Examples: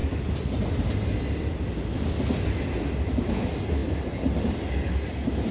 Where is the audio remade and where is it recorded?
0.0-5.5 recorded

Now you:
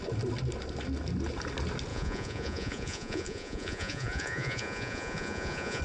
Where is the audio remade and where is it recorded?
0.0-1.9 recorded; 1.9-5.8 remade

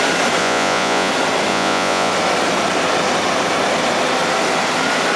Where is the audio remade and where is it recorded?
0.0-0.4 recorded; 0.4-1.1 remade; 1.1-1.5 recorded; 1.5-2.1 remade; 2.1-5.2 recorded

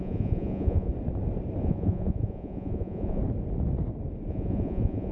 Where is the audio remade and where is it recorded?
0.0-0.9 remade; 0.9-1.6 recorded; 1.6-3.2 remade; 3.2-4.3 recorded; 4.3-5.1 remade

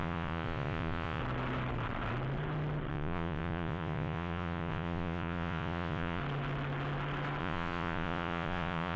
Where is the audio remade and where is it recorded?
0.0-1.2 remade; 1.2-2.9 recorded; 2.9-6.2 remade; 6.2-7.4 recorded; 7.4-9.0 remade